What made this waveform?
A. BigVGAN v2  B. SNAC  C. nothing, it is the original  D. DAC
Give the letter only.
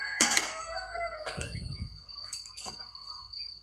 B